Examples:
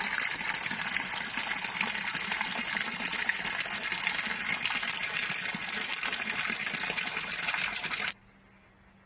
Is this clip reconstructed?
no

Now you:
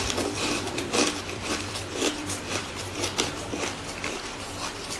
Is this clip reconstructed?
yes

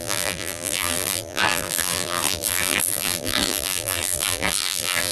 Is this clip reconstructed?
yes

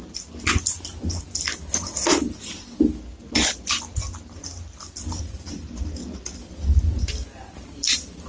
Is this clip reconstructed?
no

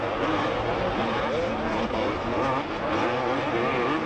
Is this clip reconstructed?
no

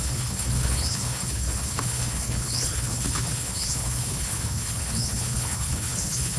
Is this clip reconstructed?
yes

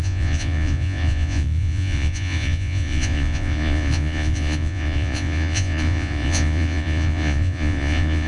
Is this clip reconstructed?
yes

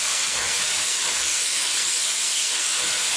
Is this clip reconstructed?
yes